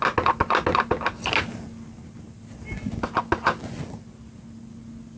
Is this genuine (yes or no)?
yes